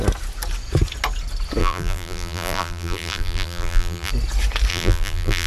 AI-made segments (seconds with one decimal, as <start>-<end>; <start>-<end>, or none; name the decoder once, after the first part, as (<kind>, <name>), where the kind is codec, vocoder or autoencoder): 1.6-4.1 (vocoder, BigVGAN v2); 4.7-5.5